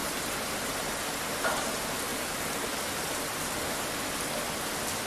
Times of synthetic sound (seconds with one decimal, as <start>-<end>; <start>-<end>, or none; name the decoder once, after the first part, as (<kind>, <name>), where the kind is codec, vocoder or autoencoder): 2.1-2.6 (vocoder, BigVGAN v2)